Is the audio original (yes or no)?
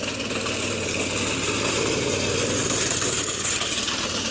yes